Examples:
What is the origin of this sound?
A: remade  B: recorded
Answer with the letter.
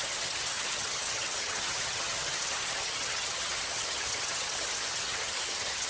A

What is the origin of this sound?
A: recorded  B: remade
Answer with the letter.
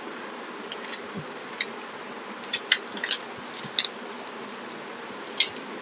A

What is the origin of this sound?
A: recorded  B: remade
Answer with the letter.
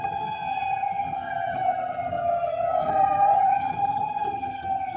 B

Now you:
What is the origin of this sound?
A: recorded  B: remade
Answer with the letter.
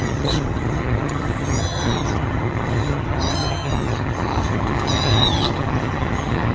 B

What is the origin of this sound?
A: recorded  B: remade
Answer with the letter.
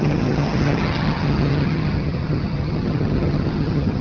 B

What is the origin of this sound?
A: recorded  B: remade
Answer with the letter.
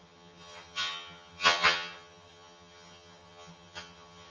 B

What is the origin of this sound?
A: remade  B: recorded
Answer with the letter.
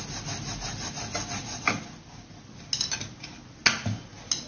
B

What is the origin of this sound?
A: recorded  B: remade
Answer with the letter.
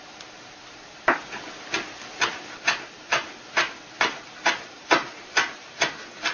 A